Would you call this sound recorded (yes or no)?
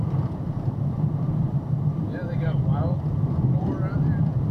yes